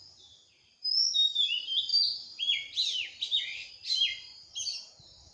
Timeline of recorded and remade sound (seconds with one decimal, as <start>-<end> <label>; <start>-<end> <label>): 0.0-5.3 recorded